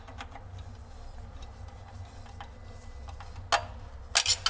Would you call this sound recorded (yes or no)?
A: yes